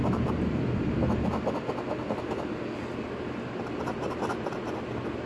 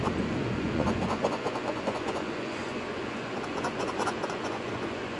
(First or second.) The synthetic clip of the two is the second